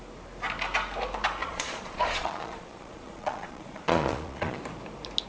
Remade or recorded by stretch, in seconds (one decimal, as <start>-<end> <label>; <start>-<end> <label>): 0.0-1.4 recorded; 1.4-4.6 remade; 4.6-5.3 recorded